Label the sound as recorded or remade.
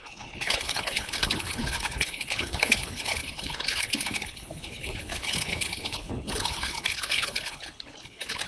remade